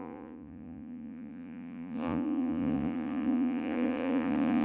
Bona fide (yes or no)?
no